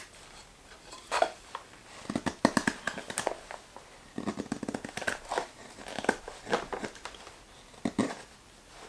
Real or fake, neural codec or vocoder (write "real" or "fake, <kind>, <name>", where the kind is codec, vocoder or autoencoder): real